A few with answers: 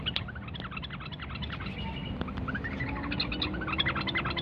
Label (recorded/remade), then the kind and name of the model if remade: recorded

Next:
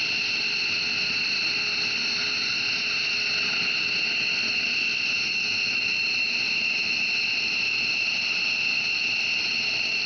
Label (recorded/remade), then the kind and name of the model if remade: recorded